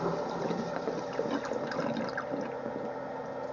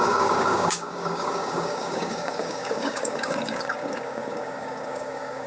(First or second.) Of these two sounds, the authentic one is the first